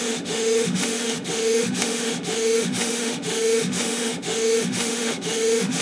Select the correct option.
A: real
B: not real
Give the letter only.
B